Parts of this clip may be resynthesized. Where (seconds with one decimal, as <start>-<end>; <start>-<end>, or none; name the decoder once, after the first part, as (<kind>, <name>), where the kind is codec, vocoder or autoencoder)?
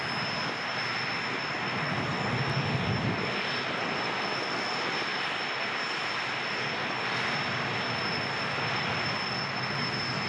none